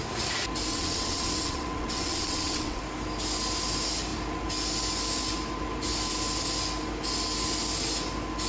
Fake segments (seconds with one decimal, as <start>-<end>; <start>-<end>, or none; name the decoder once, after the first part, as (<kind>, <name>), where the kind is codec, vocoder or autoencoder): 0.7-2.8 (vocoder, WaveNeXt)

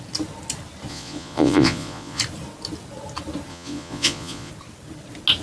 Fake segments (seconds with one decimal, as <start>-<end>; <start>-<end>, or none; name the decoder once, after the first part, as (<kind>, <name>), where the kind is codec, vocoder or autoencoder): 0.9-2.2 (vocoder, Vocos); 3.5-4.5

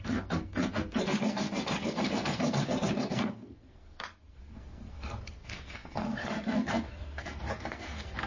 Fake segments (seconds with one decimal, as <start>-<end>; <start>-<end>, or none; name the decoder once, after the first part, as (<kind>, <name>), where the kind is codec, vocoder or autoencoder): 0.0-8.3 (codec, SNAC)

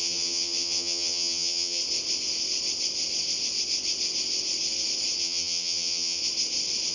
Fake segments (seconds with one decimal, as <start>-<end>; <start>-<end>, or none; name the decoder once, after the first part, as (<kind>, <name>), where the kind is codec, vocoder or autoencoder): 0.0-1.8 (vocoder, HiFi-GAN); 5.2-6.2

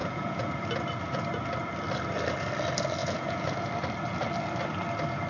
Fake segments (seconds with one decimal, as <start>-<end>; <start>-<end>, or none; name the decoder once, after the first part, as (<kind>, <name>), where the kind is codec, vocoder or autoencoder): 0.0-0.5 (vocoder, Vocos); 3.0-3.7